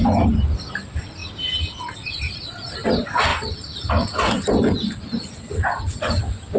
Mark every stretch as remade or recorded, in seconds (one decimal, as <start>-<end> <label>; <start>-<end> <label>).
0.0-6.6 recorded